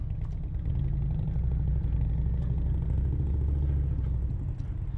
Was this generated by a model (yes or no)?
no